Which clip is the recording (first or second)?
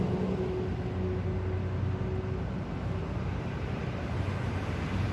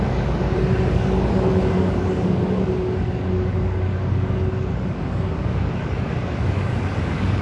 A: first